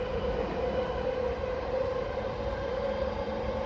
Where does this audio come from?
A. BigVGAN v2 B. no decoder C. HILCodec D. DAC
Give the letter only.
A